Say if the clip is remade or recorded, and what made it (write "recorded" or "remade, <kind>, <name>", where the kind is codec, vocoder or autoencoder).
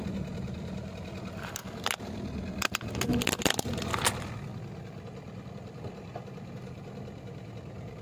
recorded